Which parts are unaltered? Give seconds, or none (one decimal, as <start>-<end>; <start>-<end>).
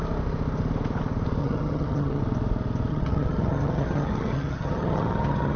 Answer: 0.0-1.4; 2.2-2.9